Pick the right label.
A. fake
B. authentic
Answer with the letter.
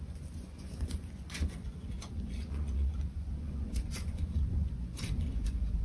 A